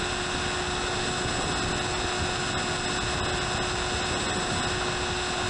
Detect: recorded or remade recorded